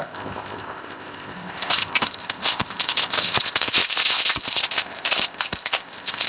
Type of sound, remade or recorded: remade